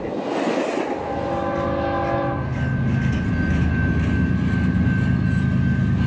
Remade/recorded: recorded